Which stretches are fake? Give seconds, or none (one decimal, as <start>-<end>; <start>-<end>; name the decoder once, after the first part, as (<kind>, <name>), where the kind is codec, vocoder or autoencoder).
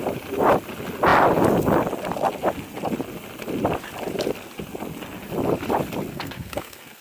6.1-7.0 (codec, SNAC)